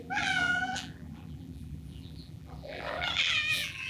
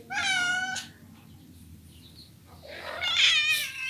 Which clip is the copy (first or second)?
first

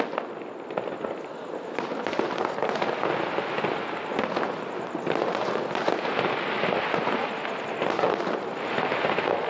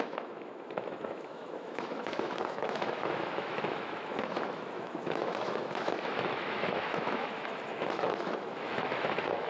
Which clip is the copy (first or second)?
second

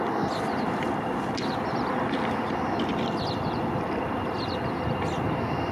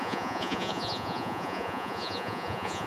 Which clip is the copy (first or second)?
second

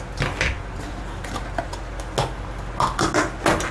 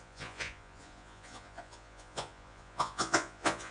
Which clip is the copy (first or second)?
second